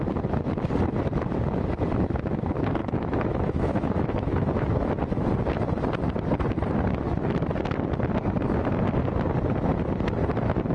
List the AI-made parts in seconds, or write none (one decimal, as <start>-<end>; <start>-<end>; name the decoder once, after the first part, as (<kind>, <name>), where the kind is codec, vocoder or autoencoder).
2.8-4.9 (autoencoder, DAC-VAE)